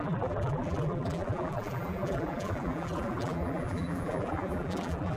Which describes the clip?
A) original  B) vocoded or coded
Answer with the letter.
B